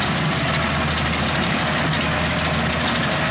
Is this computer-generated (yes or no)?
no